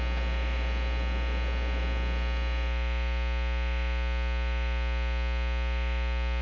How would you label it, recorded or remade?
recorded